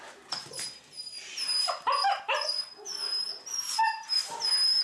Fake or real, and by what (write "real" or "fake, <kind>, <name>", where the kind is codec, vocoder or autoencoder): real